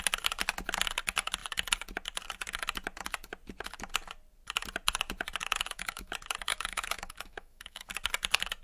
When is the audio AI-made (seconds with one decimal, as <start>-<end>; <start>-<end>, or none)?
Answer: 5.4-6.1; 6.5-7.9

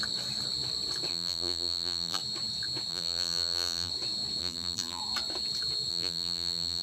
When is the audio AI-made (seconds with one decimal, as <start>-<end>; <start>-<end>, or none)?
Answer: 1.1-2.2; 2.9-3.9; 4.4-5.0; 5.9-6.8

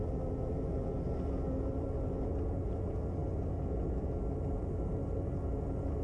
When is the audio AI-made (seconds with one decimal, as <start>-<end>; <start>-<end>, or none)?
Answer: none

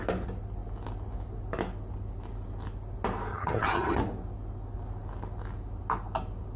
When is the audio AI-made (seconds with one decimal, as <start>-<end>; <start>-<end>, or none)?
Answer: 3.3-4.0

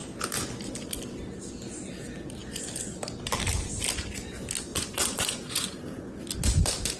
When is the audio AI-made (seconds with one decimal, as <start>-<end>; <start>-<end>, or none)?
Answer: 4.7-6.1

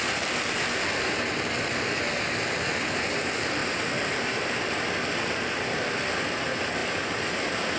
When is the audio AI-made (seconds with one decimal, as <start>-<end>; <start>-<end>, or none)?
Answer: 3.6-4.4

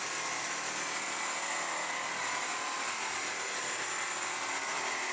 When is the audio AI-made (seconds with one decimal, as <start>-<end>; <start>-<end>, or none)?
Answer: none